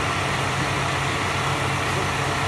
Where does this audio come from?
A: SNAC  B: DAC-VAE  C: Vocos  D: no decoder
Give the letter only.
D